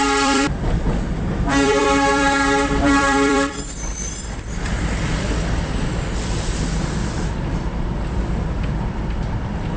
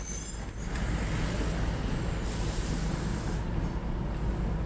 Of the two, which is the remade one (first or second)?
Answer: first